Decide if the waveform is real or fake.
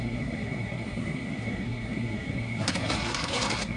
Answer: fake